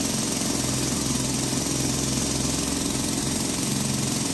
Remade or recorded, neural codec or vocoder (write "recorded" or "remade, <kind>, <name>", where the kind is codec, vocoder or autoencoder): recorded